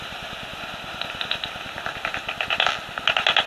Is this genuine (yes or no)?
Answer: yes